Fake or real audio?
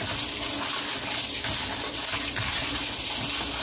real